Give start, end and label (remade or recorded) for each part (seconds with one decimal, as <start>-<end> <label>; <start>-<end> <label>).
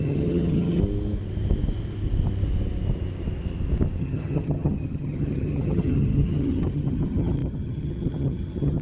0.0-0.8 remade; 0.8-4.0 recorded; 4.0-8.8 remade